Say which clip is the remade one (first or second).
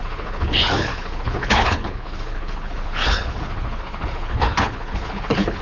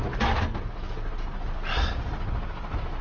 first